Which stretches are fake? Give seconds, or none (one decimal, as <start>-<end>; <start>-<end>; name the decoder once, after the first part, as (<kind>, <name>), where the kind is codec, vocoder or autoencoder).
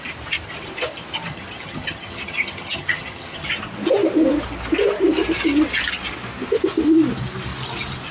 1.3-3.5 (vocoder, HiFi-GAN)